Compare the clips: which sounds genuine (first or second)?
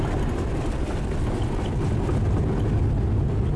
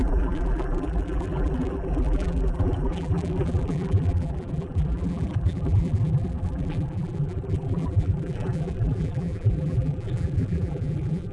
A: first